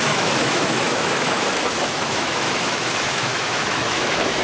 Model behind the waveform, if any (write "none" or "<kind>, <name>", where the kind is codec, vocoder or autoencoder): autoencoder, DAC-VAE